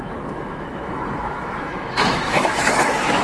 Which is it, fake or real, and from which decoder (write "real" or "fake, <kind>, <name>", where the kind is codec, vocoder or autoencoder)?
fake, autoencoder, DAC-VAE